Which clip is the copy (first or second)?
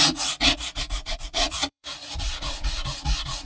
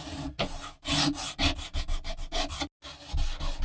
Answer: first